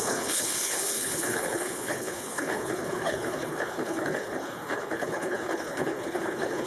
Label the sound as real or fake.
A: fake